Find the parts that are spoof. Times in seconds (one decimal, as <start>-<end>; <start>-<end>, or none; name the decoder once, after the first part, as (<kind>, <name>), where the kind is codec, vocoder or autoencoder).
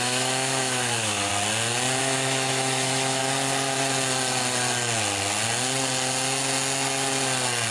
0.0-1.3 (autoencoder, DAC-VAE); 2.0-3.2